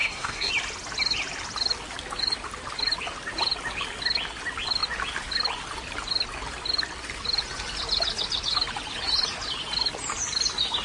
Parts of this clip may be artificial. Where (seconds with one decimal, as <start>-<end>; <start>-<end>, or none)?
0.0-0.5